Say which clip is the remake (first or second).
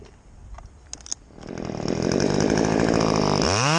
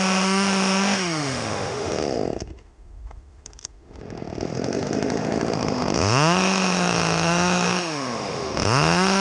second